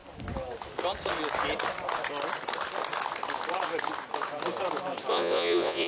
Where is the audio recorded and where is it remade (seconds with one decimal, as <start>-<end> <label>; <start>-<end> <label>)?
0.0-5.1 recorded; 5.1-5.9 remade